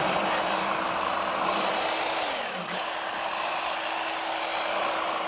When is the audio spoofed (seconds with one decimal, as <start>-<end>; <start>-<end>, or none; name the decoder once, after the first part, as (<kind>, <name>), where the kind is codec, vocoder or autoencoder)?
none

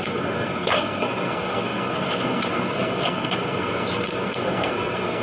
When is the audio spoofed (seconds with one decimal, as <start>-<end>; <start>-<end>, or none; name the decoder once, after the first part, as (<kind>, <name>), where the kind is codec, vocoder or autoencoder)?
0.0-5.2 (codec, SNAC)

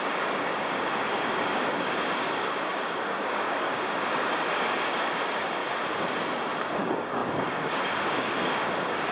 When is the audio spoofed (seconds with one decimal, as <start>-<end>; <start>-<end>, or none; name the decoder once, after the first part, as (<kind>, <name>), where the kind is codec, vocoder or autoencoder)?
0.0-5.6 (codec, DAC); 6.6-9.1

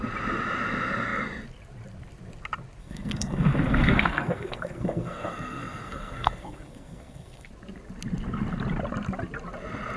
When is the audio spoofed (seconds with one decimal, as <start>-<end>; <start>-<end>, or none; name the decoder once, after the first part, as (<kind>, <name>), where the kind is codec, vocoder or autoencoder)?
2.8-7.5 (codec, SNAC)

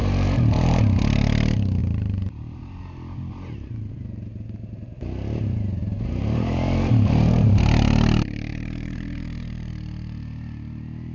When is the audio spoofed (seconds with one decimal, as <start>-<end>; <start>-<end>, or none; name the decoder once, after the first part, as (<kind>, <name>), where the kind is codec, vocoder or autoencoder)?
0.0-0.8 (vocoder, BigVGAN v2); 1.8-2.6; 5.8-7.6; 8.5-9.7

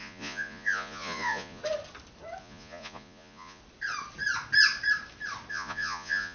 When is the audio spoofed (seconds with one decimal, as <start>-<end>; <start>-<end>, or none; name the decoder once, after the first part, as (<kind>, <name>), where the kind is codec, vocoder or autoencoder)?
0.0-1.6 (vocoder, Vocos); 2.4-3.6; 5.5-6.3

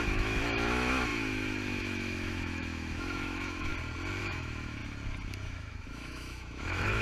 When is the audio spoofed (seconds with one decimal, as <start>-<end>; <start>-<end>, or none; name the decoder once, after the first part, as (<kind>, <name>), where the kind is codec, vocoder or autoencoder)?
0.0-3.7 (autoencoder, DAC-VAE); 4.2-4.8; 5.5-7.0

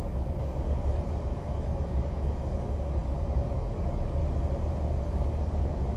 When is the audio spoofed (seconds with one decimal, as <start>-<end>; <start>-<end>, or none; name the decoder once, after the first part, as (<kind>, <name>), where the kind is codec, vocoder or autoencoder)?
0.0-4.2 (codec, DAC); 5.0-6.0